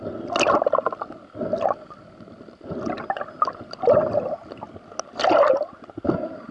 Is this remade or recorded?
recorded